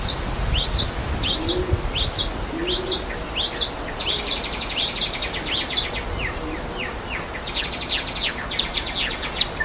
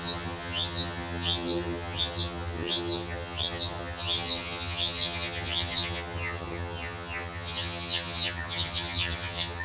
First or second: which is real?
first